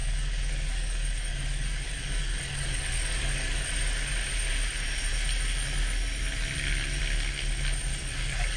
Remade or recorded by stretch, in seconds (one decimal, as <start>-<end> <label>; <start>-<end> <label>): 0.0-3.7 remade; 3.7-7.9 recorded; 7.9-8.6 remade

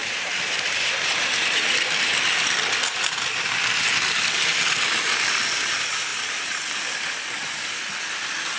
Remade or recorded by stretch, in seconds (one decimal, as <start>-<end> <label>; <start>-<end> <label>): 0.0-1.3 remade; 1.3-6.1 recorded; 6.1-6.6 remade; 6.6-8.6 recorded

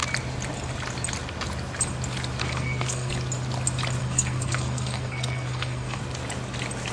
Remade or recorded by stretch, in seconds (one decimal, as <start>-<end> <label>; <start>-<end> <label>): 0.0-2.4 recorded; 2.4-3.1 remade; 3.1-4.0 recorded; 4.0-6.0 remade; 6.0-6.9 recorded

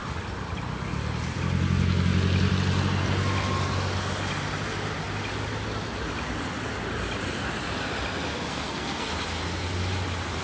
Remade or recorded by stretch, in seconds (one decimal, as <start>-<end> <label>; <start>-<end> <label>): 0.0-8.3 recorded; 8.3-9.1 remade; 9.1-10.4 recorded